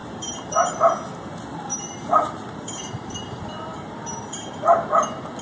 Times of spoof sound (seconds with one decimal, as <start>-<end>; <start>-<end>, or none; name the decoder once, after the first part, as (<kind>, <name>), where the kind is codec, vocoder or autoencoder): 0.0-0.8 (vocoder, BigVGAN v2); 1.7-4.9